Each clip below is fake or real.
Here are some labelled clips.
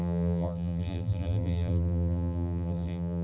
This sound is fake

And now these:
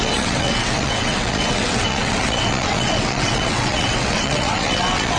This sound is fake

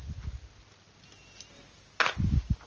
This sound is real